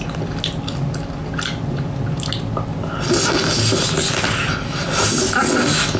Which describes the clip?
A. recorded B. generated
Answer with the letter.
A